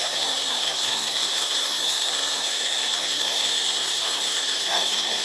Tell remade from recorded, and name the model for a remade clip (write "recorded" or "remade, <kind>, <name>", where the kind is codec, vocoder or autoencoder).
remade, codec, SNAC